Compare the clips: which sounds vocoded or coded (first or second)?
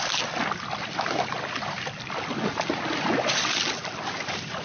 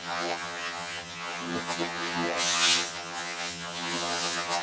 second